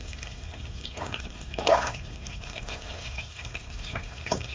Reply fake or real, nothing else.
fake